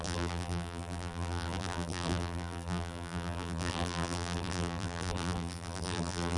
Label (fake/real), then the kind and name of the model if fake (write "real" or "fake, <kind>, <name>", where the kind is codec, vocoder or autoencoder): fake, vocoder, BigVGAN v2